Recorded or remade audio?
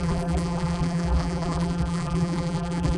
remade